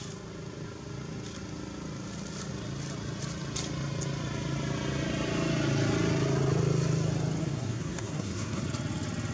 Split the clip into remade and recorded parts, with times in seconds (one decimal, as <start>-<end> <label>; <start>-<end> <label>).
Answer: 0.0-7.4 recorded; 7.4-8.6 remade; 8.6-9.3 recorded